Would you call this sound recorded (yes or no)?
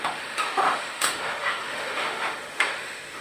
no